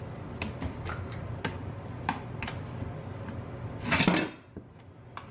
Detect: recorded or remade recorded